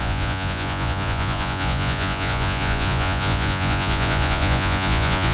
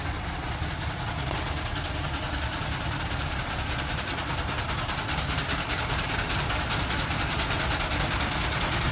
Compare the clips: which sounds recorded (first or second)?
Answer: second